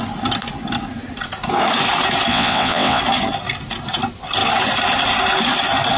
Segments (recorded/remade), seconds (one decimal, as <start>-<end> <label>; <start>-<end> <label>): 0.0-2.3 recorded; 2.3-3.0 remade; 3.0-6.0 recorded